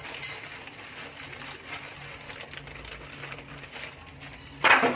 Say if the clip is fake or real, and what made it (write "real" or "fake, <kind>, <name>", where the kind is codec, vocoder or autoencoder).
real